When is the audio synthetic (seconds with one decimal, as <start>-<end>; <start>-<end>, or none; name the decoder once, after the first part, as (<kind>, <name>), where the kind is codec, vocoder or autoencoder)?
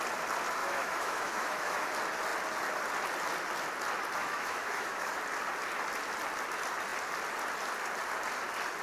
0.6-1.9 (autoencoder, DAC-VAE); 4.2-5.2